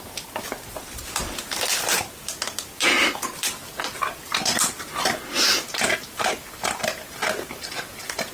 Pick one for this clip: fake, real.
real